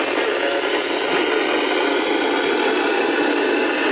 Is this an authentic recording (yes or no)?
yes